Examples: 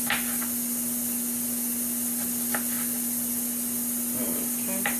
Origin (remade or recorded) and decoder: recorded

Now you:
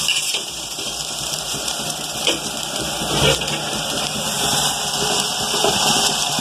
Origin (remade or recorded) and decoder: remade, vocoder, BigVGAN v2